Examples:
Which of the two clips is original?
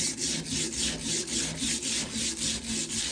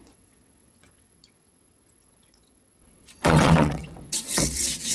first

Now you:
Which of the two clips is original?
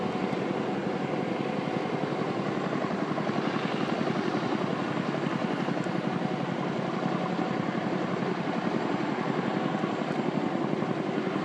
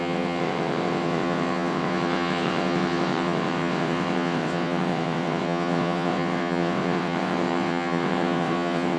first